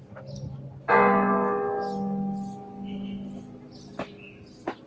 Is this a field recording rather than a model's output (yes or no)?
yes